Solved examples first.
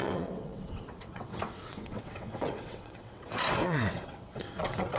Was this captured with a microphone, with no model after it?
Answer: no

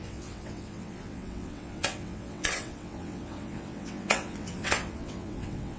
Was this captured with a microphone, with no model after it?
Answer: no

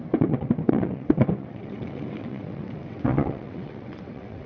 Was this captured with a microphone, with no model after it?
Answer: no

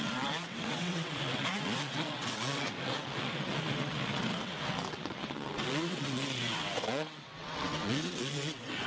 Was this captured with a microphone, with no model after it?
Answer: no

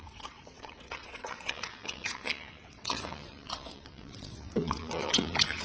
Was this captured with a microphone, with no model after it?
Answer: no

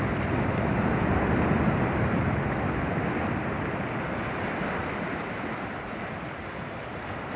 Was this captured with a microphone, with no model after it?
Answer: yes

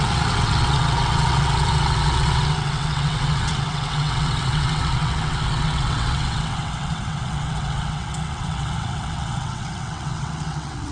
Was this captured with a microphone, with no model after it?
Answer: no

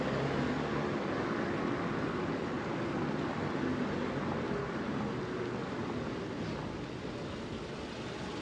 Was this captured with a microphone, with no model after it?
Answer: yes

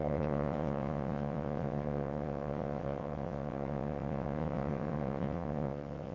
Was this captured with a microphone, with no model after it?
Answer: no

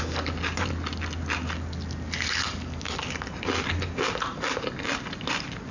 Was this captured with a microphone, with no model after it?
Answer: yes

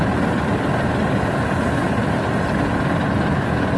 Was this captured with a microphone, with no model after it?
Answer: yes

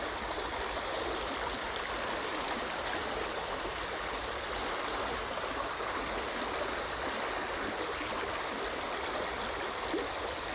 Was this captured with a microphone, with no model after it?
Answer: yes